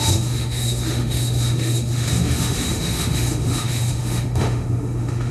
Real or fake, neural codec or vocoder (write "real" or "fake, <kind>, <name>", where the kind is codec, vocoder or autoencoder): fake, autoencoder, DAC-VAE